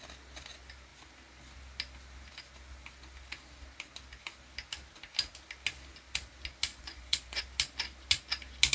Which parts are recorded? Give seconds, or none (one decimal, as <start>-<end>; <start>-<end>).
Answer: 0.0-6.7; 7.4-8.7